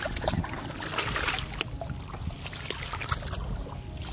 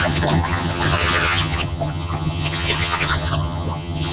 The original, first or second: first